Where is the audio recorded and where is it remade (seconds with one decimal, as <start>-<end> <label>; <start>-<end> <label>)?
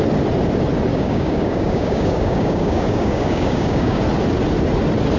0.0-0.9 recorded; 0.9-4.0 remade; 4.0-5.2 recorded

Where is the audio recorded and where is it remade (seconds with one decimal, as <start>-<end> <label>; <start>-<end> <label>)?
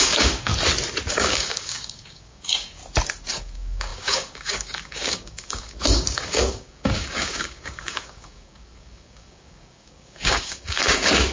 0.0-0.5 remade; 0.5-1.1 recorded; 1.1-2.8 remade; 2.8-3.3 recorded; 3.3-11.3 remade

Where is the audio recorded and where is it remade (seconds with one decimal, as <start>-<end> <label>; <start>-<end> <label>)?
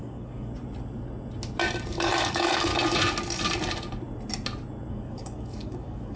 0.0-0.5 remade; 0.5-1.9 recorded; 1.9-2.7 remade; 2.7-4.9 recorded; 4.9-6.2 remade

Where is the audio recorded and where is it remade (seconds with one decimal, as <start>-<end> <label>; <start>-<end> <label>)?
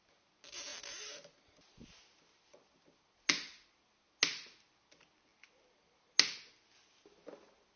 0.0-7.8 recorded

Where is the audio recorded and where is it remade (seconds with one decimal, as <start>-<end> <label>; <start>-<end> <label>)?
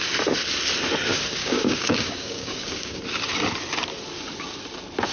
0.0-1.4 recorded; 1.4-3.0 remade; 3.0-5.1 recorded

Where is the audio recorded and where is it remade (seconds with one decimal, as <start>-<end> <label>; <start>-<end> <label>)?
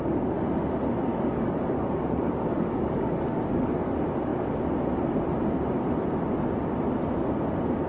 0.0-1.1 recorded; 1.1-3.9 remade; 3.9-7.9 recorded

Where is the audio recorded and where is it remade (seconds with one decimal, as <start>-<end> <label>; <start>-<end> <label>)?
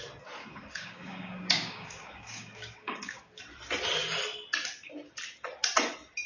0.0-0.4 recorded; 0.4-3.4 remade; 3.4-6.3 recorded